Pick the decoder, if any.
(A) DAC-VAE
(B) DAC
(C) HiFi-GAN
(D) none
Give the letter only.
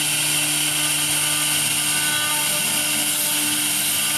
D